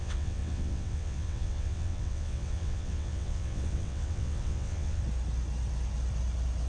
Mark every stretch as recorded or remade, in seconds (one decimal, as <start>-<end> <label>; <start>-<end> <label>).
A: 0.0-5.0 remade; 5.0-6.7 recorded